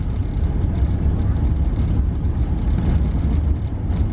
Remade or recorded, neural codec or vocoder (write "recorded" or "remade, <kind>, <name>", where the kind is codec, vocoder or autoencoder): recorded